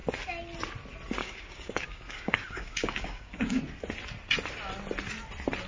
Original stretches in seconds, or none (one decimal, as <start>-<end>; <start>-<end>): 0.0-1.2; 3.6-5.7